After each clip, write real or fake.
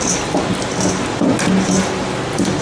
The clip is real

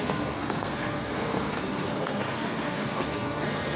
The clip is fake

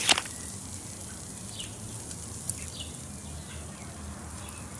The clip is real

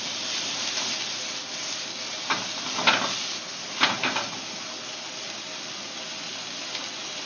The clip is real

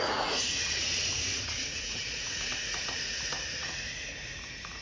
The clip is fake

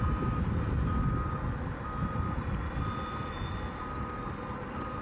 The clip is real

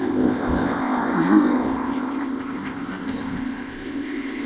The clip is fake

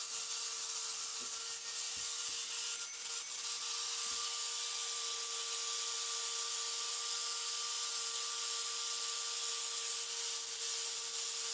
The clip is real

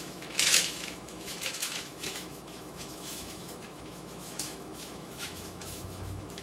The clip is fake